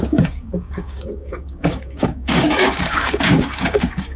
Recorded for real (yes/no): no